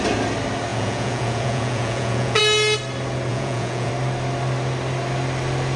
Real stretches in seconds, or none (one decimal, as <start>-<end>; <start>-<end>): 0.0-0.7; 2.4-3.3; 3.9-5.8